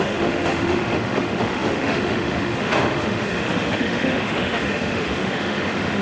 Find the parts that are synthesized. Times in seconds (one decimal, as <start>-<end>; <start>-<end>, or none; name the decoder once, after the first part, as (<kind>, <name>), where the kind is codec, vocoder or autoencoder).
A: 0.0-6.0 (autoencoder, DAC-VAE)